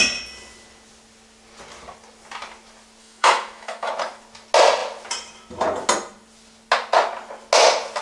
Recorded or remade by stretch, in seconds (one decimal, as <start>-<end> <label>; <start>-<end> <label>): 0.0-3.0 recorded; 3.0-3.9 remade; 3.9-8.0 recorded